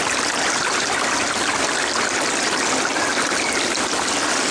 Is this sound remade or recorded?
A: recorded